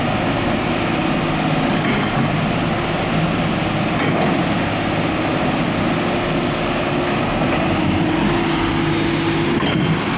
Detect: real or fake real